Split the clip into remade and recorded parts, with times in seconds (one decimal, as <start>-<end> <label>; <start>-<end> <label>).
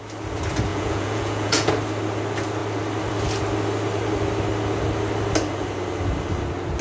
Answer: 0.0-0.7 recorded; 0.7-1.7 remade; 1.7-6.8 recorded